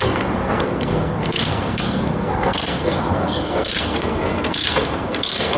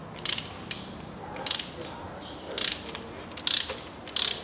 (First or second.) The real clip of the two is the second